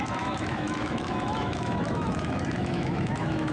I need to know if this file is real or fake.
fake